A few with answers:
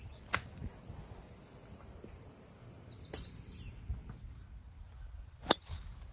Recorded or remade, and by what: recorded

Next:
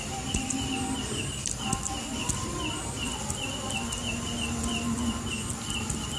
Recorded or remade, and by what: recorded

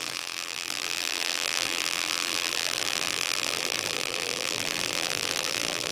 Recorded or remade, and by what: remade, vocoder, BigVGAN v2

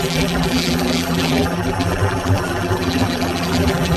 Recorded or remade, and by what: remade, vocoder, BigVGAN v2